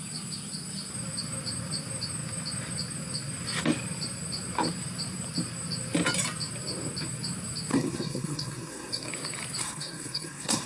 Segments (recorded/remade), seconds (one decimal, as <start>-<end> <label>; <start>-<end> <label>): 0.0-7.7 recorded; 7.7-9.1 remade; 9.1-9.6 recorded; 9.6-10.7 remade